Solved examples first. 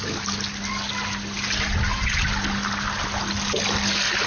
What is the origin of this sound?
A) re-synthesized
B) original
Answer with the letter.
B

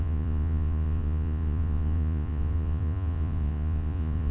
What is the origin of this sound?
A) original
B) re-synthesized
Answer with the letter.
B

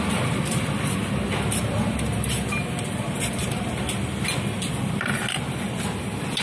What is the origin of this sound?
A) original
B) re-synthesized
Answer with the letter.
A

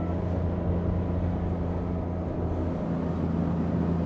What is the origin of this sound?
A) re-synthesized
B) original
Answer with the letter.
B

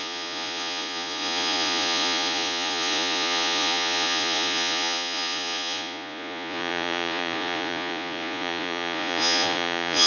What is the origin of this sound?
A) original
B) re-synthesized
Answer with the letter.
B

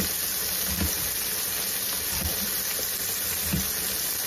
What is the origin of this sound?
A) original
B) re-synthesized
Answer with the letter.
A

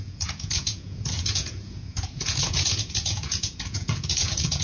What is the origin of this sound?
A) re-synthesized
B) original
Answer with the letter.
A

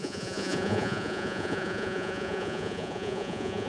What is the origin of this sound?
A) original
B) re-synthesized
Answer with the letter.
B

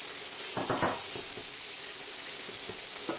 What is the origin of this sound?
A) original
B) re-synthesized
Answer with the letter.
A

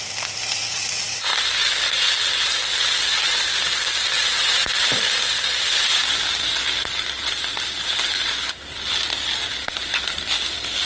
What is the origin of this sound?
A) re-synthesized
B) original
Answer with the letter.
B